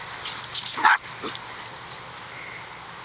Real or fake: real